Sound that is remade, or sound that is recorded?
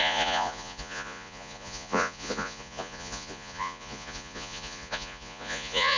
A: remade